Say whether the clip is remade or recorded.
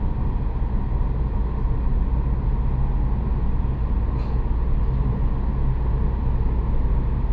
recorded